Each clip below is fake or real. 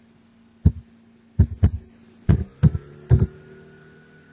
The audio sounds real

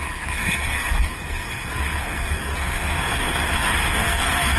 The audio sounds fake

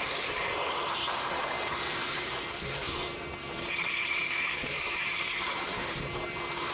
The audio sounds fake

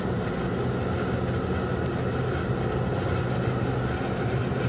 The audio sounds real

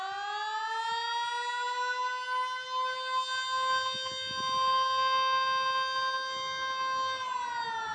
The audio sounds real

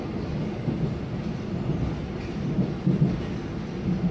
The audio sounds real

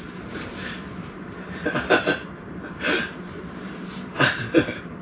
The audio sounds fake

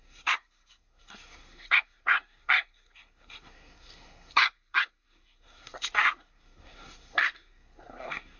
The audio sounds fake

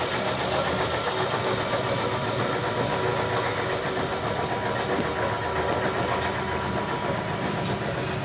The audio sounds real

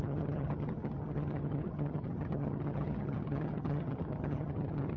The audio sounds fake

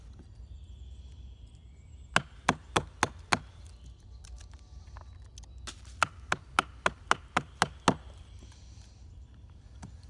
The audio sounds real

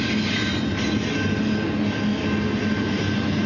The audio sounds real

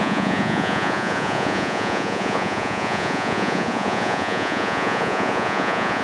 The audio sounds fake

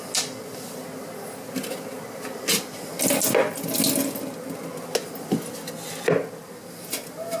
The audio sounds real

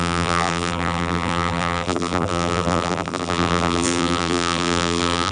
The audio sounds fake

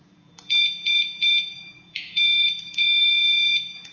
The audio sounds fake